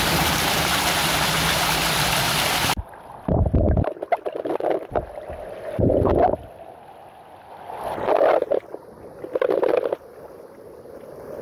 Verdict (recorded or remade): recorded